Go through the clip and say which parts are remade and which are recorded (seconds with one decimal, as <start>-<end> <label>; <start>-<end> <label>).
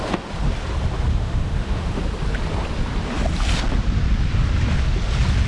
0.0-1.1 recorded; 1.1-2.0 remade; 2.0-5.5 recorded